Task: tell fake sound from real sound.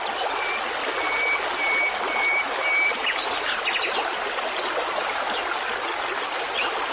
real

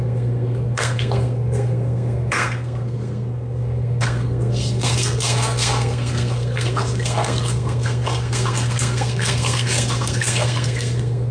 fake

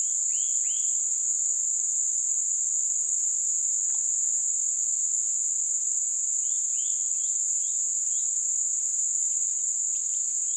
real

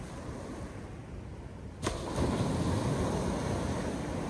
real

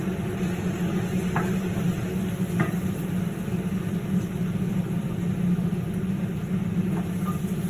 real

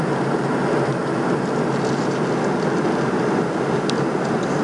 real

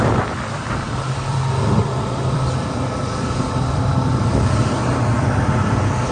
fake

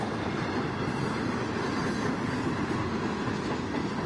real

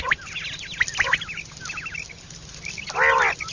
real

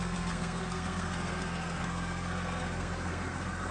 fake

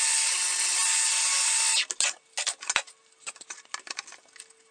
real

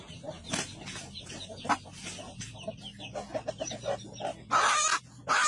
real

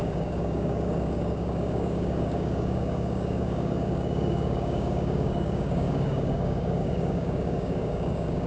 fake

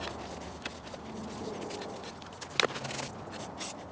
real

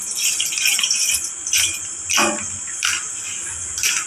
real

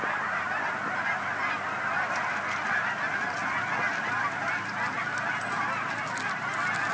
real